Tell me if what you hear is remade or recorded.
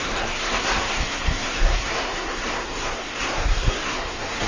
remade